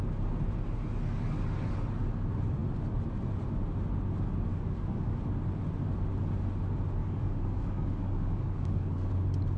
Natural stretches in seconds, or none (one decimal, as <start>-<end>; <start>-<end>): 0.0-4.5; 5.2-7.0; 9.1-9.6